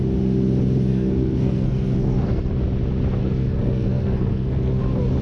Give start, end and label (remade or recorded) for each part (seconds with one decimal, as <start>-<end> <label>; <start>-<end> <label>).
0.0-0.9 recorded; 0.9-2.5 remade; 2.5-3.2 recorded; 3.2-4.8 remade; 4.8-5.2 recorded